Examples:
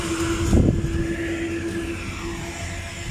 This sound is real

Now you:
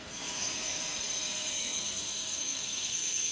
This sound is fake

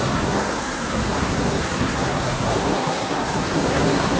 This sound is fake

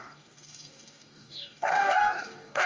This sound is fake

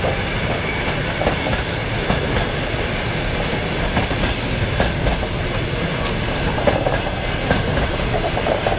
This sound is real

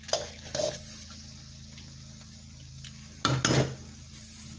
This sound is real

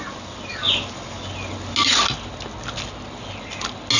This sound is real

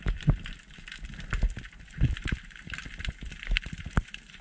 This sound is real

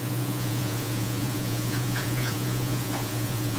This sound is fake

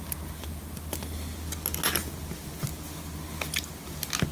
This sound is real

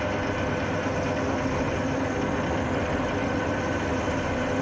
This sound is real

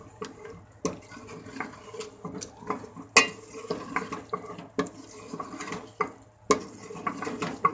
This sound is real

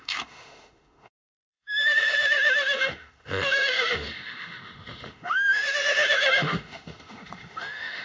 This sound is fake